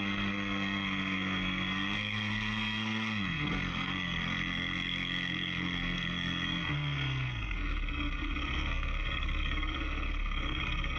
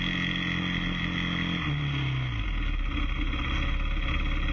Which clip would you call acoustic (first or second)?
second